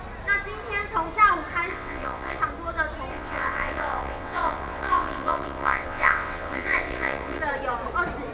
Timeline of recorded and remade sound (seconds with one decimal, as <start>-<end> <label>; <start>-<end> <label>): 0.0-1.7 recorded; 1.7-2.4 remade; 2.4-3.1 recorded; 3.1-7.4 remade; 7.4-8.3 recorded